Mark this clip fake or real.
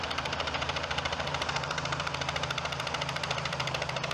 fake